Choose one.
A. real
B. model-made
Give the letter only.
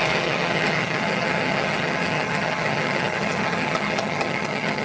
B